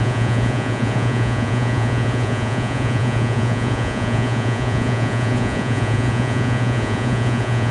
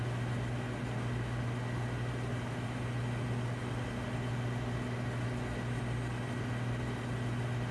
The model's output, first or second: first